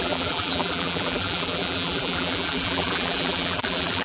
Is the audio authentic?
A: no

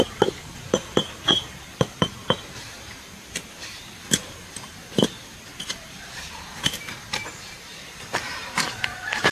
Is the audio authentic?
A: no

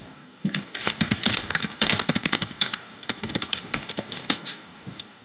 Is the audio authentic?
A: no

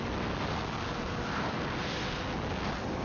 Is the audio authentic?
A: yes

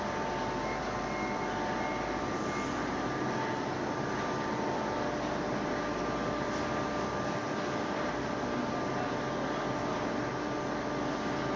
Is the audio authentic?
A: yes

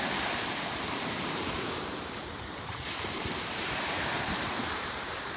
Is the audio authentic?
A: no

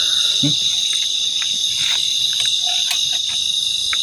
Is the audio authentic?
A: yes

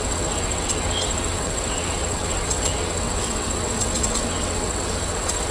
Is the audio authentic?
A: no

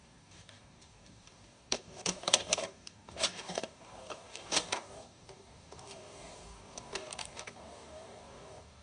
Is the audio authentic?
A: no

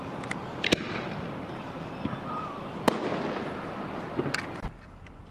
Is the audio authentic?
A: yes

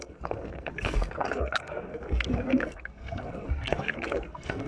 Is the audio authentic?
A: no